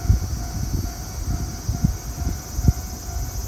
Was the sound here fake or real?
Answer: real